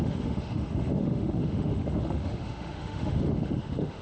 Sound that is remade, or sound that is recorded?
remade